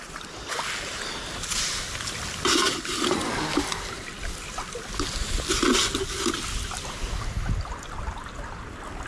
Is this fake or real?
real